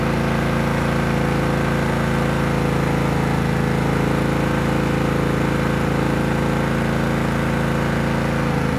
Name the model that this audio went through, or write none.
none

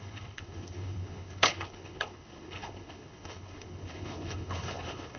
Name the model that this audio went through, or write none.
codec, HILCodec